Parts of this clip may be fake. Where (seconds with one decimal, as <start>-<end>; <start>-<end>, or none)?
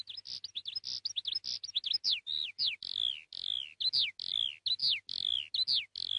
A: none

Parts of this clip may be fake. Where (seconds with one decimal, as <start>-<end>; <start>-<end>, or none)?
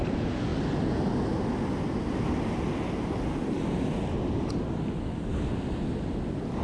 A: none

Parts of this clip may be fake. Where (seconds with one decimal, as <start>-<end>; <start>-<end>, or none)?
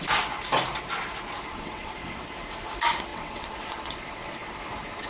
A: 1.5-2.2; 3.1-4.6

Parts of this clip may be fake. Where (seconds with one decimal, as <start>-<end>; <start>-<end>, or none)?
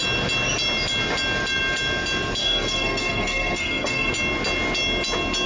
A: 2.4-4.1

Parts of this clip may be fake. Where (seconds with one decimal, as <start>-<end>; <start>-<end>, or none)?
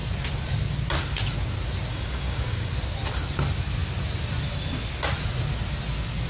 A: 1.9-2.7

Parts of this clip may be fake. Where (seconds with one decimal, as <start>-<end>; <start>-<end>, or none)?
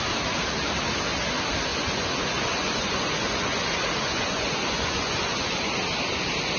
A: 1.7-5.7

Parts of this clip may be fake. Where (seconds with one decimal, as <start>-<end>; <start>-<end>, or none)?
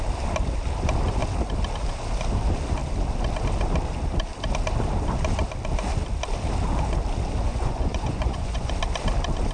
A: 7.5-8.7